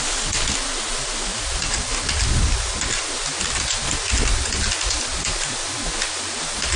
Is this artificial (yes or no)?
no